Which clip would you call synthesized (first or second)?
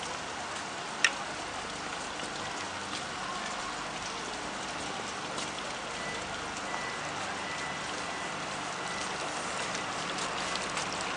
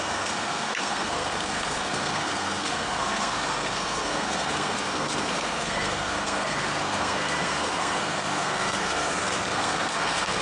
second